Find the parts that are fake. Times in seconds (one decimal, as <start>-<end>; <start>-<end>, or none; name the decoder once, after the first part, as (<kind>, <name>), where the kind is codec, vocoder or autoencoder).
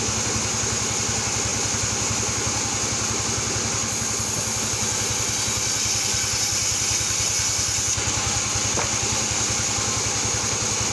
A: none